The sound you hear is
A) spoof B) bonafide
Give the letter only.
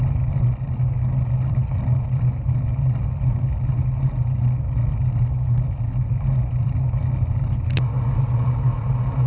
B